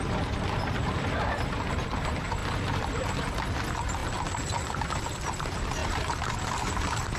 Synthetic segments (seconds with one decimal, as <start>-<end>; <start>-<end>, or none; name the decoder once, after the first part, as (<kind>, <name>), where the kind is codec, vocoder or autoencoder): none